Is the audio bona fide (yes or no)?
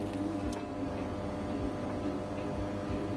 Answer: yes